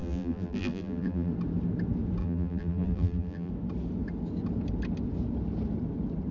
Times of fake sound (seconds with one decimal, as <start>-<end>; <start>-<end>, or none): 0.0-1.3; 2.2-3.5